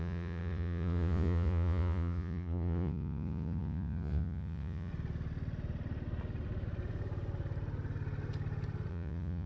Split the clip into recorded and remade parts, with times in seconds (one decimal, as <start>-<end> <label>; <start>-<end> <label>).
0.0-4.9 remade; 4.9-8.9 recorded; 8.9-9.5 remade